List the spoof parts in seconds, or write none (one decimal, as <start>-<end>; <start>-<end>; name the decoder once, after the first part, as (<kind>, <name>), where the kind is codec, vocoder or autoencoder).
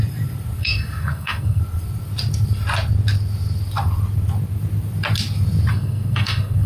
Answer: 0.6-1.6 (codec, SNAC); 5.7-6.7